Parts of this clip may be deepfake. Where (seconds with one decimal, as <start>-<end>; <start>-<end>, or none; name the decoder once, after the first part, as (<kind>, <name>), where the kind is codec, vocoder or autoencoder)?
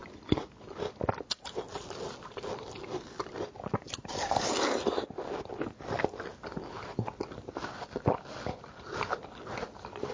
none